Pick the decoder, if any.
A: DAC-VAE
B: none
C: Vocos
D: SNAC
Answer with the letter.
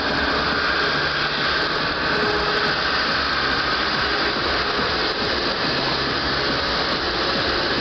B